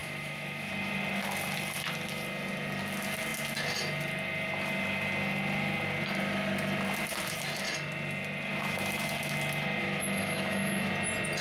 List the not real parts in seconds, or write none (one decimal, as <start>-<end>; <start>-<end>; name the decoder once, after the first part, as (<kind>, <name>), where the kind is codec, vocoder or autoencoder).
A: 0.0-0.7 (autoencoder, DAC-VAE); 9.8-10.9